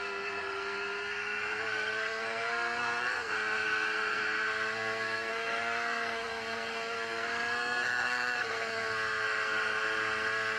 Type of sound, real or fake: fake